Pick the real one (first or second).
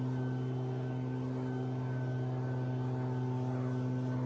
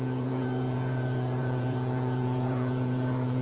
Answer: first